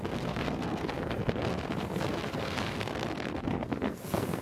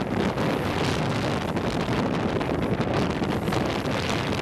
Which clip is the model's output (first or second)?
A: first